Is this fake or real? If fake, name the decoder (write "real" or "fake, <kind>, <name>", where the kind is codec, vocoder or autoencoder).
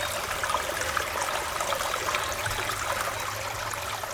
real